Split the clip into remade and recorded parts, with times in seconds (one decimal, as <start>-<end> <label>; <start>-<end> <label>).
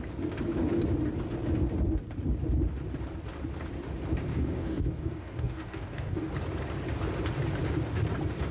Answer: 0.0-4.3 recorded; 4.3-6.3 remade; 6.3-8.5 recorded